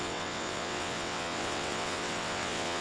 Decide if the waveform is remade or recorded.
remade